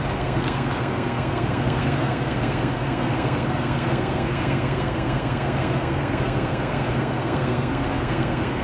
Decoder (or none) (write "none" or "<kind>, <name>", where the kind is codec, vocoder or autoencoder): codec, SNAC